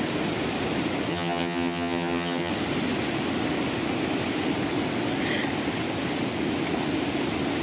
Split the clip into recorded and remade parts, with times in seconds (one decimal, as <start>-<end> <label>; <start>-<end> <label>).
0.0-1.1 recorded; 1.1-2.5 remade; 2.5-7.6 recorded

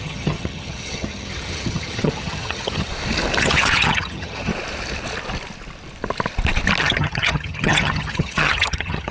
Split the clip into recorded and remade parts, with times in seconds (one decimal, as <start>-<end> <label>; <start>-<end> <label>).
0.0-2.9 remade; 2.9-3.4 recorded; 3.4-4.5 remade; 4.5-6.8 recorded; 6.8-9.1 remade